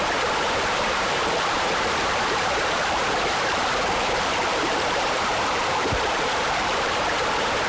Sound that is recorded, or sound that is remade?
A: remade